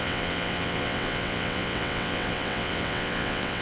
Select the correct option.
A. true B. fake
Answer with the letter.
B